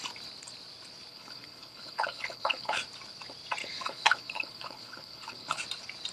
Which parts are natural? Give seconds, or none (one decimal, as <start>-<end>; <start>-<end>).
0.0-1.1; 2.8-3.6; 5.6-6.1